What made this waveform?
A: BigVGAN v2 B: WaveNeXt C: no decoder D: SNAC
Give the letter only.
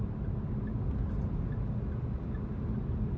C